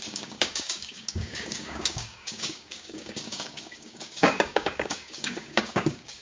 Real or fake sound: fake